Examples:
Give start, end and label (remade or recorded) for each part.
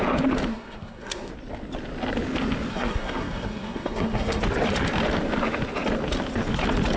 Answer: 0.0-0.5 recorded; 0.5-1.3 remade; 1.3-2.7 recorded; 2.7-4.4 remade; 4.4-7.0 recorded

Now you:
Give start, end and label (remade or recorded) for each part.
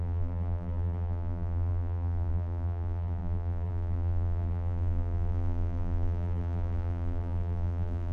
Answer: 0.0-8.1 remade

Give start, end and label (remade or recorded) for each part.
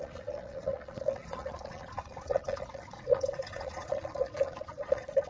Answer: 0.0-5.3 remade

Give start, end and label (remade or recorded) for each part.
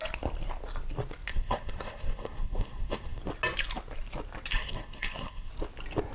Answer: 0.0-1.3 recorded; 1.3-3.2 remade; 3.2-4.5 recorded; 4.5-5.5 remade; 5.5-6.1 recorded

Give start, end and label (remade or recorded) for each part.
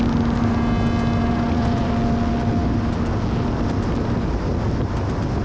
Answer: 0.0-1.2 recorded; 1.2-1.9 remade; 1.9-5.4 recorded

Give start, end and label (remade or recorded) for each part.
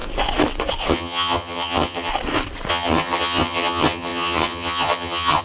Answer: 0.0-0.9 recorded; 0.9-2.1 remade; 2.1-2.7 recorded; 2.7-5.4 remade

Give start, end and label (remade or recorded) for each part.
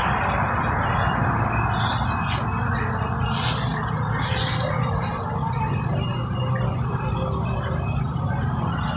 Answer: 0.0-9.0 recorded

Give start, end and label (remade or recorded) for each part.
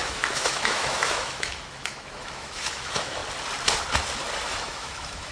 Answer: 0.0-3.2 remade; 3.2-4.5 recorded; 4.5-5.3 remade